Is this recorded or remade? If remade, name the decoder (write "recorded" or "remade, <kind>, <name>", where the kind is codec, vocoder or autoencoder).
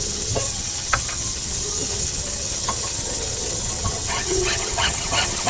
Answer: remade, vocoder, HiFi-GAN